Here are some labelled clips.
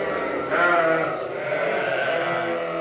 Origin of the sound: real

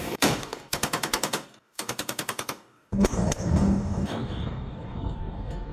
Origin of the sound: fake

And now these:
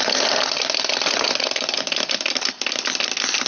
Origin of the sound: real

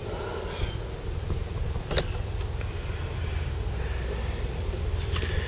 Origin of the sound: real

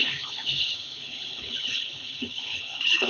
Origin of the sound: fake